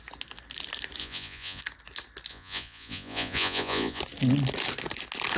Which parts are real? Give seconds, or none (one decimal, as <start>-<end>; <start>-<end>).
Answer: 0.0-1.0; 1.6-2.3; 4.0-5.4